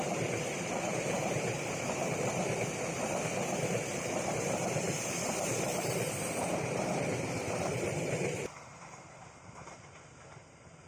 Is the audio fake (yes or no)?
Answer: yes